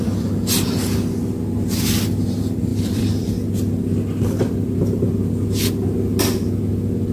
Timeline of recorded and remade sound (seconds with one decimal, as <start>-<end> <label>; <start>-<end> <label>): 0.0-2.7 recorded; 2.7-3.3 remade; 3.3-7.1 recorded